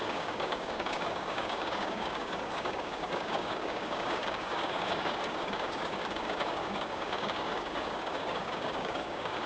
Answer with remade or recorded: remade